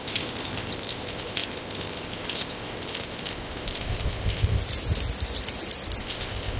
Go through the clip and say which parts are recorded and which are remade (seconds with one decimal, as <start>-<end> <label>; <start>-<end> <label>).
0.0-4.6 remade; 4.6-6.0 recorded; 6.0-6.6 remade

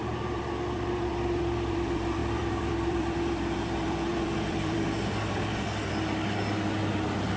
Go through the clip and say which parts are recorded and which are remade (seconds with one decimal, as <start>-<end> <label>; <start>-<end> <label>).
0.0-7.4 remade